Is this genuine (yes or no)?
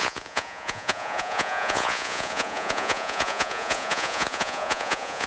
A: no